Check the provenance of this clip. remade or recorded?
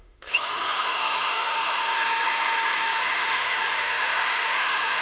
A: remade